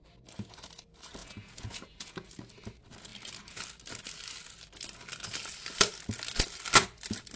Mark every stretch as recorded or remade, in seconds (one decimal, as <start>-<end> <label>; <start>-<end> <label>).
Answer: 0.0-1.2 recorded; 1.2-2.3 remade; 2.3-7.4 recorded